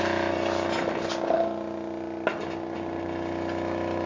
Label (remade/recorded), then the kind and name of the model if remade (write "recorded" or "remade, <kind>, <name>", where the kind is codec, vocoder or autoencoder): recorded